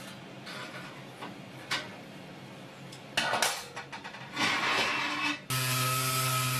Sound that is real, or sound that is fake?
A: real